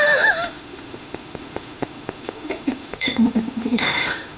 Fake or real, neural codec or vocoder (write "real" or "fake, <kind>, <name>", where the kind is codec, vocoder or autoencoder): fake, autoencoder, DAC-VAE